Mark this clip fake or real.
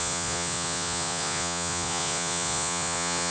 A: fake